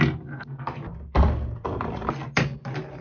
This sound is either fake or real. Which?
real